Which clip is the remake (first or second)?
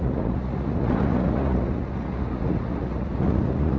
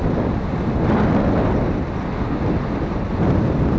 first